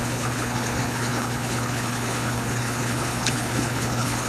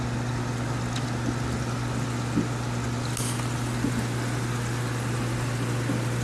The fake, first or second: first